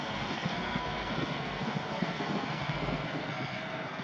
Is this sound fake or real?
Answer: fake